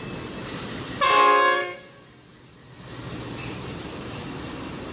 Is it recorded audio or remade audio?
recorded